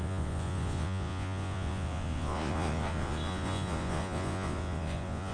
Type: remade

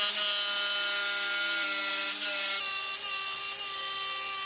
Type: recorded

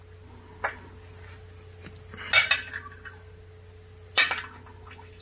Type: recorded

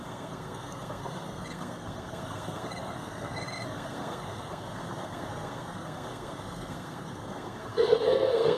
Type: remade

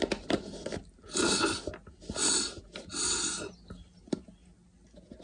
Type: recorded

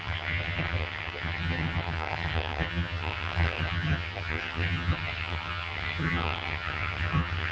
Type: remade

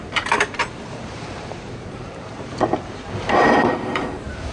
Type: remade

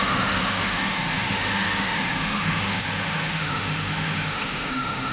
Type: remade